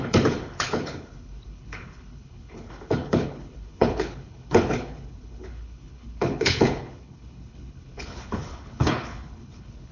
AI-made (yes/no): yes